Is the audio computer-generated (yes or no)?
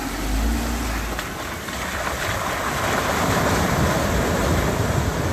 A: no